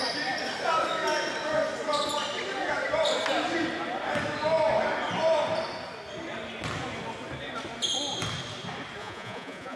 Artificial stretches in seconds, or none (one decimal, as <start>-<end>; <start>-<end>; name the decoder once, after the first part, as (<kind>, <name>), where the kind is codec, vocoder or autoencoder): 9.0-9.8 (vocoder, Vocos)